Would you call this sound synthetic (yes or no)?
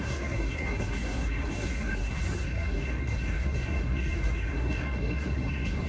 yes